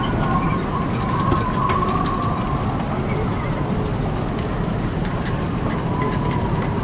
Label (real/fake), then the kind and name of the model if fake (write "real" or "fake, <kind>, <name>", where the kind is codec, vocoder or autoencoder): real